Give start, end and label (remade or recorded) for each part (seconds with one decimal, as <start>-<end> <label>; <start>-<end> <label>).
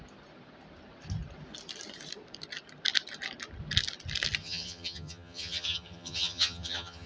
0.0-4.4 recorded; 4.4-7.1 remade